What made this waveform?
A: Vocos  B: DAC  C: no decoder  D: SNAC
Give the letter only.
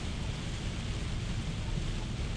C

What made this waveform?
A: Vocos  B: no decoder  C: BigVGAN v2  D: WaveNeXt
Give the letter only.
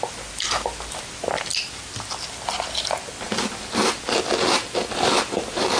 B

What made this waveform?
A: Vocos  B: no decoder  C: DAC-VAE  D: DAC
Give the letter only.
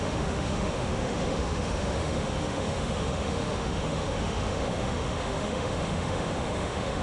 C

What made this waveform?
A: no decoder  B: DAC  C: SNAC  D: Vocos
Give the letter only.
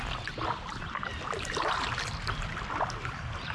A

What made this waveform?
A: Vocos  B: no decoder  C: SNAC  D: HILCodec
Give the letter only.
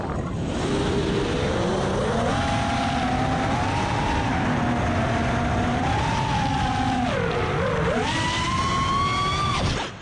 B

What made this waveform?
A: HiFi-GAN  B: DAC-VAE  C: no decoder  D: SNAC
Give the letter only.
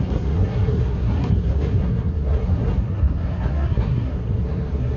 D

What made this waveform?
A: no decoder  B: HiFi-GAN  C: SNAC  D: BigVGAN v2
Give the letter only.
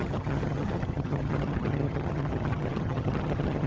B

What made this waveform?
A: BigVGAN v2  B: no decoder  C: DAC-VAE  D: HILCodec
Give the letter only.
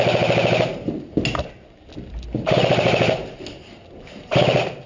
B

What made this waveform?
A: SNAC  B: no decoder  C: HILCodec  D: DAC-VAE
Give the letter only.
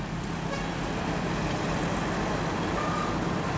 B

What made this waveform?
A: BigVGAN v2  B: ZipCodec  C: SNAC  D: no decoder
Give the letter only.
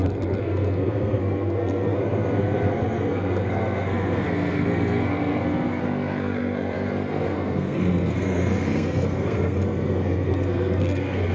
C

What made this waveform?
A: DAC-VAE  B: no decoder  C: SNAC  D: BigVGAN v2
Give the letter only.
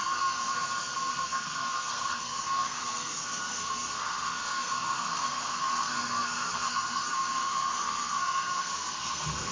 C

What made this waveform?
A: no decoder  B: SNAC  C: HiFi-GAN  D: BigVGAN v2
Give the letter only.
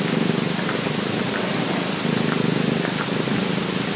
A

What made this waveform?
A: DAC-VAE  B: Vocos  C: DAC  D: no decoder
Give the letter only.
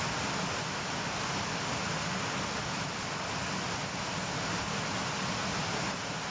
D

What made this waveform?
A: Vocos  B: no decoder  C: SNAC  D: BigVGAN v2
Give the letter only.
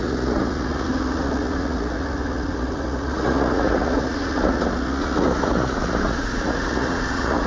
A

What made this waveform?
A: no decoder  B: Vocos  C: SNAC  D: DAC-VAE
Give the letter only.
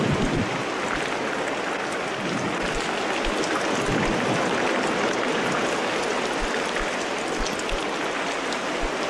A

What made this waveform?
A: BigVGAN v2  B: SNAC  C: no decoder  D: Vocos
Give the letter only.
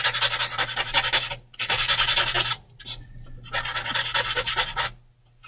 C